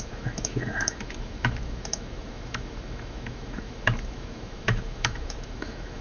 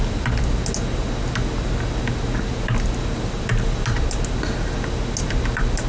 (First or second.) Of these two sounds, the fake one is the first